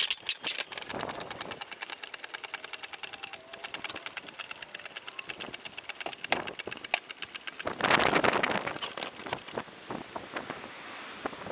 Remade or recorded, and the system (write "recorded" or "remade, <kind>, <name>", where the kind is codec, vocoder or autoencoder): recorded